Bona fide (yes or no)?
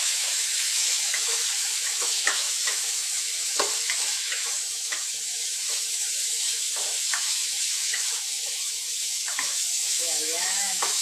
no